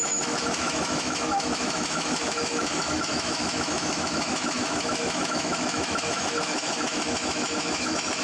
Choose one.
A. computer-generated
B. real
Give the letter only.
A